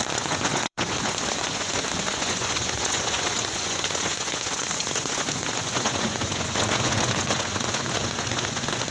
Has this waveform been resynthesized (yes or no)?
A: yes